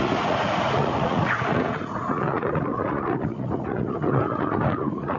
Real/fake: fake